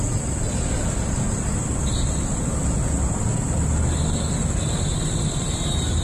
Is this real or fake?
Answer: real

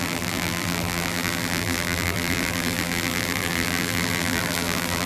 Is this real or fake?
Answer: fake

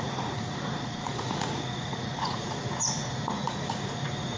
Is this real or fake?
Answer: fake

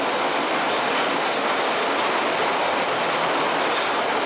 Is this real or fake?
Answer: real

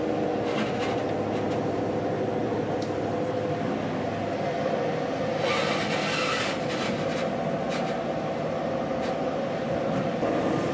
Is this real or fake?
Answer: real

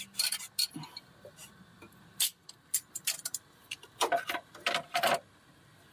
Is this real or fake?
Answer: real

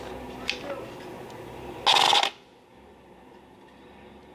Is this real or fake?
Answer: real